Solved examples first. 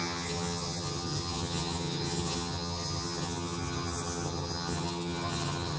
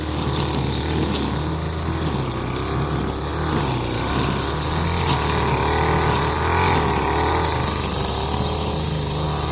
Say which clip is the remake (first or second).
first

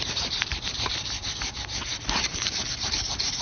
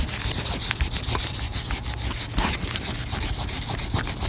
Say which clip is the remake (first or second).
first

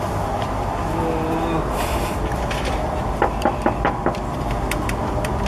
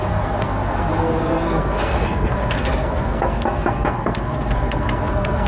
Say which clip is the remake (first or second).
second